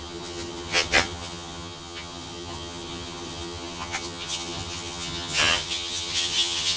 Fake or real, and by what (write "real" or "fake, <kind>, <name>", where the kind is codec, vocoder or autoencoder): fake, vocoder, HiFi-GAN